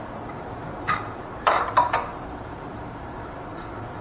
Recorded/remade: remade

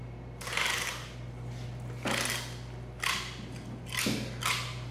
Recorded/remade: recorded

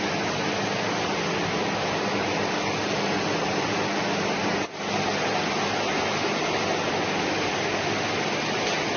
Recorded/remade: recorded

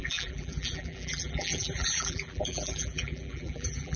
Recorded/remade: remade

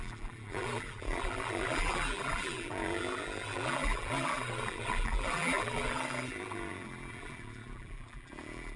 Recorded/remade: remade